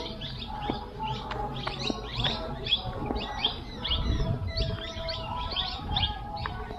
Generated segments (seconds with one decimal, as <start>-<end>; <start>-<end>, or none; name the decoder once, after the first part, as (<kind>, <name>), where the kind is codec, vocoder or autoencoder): 2.1-6.0 (vocoder, BigVGAN v2)